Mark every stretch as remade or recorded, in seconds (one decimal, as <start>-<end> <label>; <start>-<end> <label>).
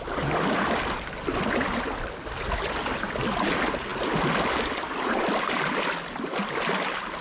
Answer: 0.0-7.2 recorded